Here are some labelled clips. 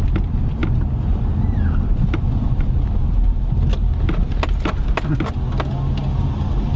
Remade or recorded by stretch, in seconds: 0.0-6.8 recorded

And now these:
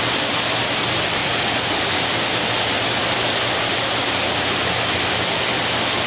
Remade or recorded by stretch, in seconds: 0.0-1.2 recorded; 1.2-1.7 remade; 1.7-6.1 recorded

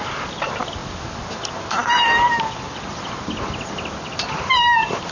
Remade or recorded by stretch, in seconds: 0.0-5.1 recorded